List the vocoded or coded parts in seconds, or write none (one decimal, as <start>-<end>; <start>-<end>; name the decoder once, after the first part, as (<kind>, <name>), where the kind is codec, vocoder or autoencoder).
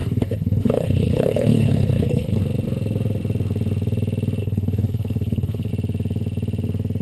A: 0.0-2.4 (codec, HILCodec); 4.4-5.7